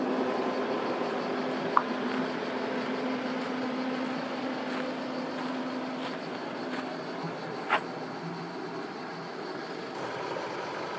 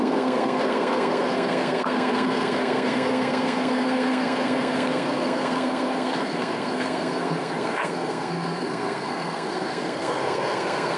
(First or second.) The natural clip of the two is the first